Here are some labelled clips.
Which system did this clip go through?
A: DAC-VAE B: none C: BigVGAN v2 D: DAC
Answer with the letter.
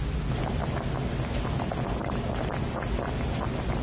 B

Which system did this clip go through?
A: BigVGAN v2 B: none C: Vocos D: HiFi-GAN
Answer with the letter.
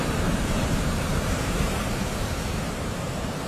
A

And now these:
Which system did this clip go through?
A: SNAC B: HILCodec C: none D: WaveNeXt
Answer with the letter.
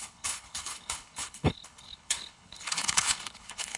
B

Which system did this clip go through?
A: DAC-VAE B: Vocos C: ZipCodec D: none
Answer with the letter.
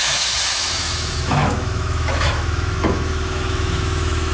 A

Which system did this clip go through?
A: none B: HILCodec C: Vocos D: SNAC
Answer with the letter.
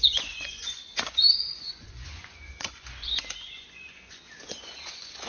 C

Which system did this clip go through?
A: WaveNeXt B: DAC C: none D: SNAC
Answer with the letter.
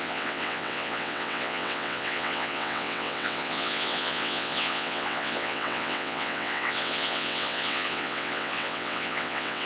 A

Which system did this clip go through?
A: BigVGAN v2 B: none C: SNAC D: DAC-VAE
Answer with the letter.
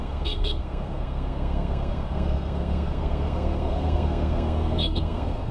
C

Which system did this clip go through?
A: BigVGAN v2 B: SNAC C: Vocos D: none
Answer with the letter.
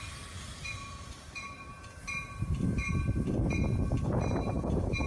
A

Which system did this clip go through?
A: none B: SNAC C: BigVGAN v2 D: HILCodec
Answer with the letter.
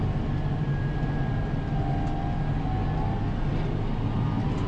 A